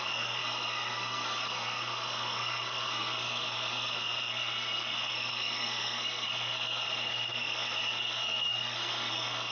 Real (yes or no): no